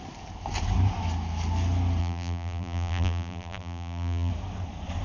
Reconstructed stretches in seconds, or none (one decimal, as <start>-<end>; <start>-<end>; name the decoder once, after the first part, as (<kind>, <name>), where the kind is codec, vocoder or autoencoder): 2.0-4.3 (vocoder, BigVGAN v2)